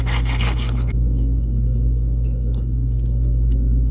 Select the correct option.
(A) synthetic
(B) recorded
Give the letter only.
A